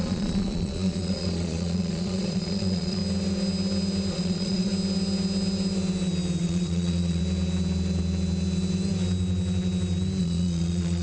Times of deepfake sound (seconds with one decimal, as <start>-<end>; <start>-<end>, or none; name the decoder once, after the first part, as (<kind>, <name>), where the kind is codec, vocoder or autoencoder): 0.0-3.0 (vocoder, Vocos); 4.1-4.7; 6.4-7.2; 10.2-11.0

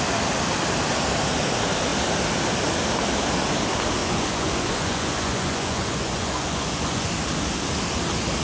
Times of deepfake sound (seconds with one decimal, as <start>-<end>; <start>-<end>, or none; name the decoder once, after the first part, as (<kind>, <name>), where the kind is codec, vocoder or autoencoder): 4.0-7.1 (vocoder, Vocos)